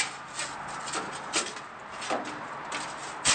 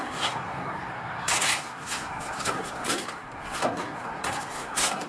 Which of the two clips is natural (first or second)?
first